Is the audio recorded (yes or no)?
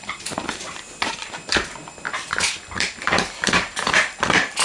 no